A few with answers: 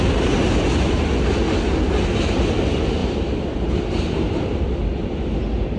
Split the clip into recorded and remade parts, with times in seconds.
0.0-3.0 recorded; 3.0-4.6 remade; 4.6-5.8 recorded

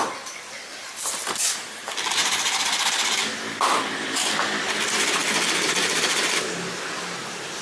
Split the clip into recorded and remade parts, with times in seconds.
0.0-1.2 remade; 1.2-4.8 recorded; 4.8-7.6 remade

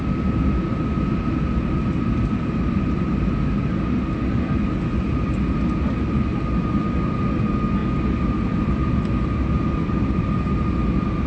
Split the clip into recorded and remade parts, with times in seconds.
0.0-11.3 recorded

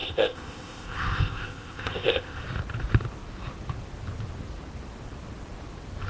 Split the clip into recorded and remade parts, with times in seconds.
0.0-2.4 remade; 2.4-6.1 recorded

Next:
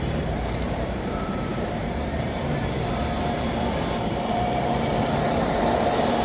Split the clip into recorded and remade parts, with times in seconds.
0.0-6.2 remade

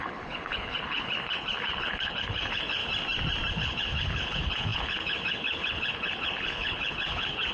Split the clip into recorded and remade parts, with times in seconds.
0.0-2.8 remade; 2.8-3.5 recorded; 3.5-7.5 remade

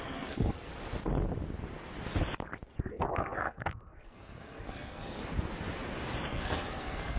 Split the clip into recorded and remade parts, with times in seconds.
0.0-0.7 remade; 0.7-2.9 recorded; 2.9-5.2 remade; 5.2-6.3 recorded; 6.3-7.2 remade